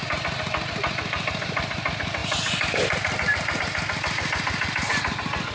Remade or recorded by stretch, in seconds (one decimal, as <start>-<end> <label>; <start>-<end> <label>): 0.0-5.5 recorded